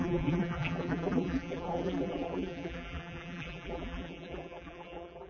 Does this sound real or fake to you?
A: fake